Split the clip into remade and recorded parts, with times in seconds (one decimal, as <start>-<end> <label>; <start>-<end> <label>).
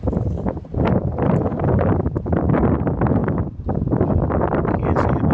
0.0-1.5 recorded; 1.5-2.4 remade; 2.4-5.3 recorded